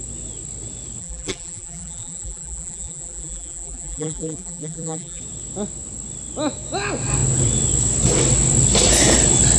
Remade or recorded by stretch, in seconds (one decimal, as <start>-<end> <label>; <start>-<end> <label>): 0.0-1.0 recorded; 1.0-5.2 remade; 5.2-9.6 recorded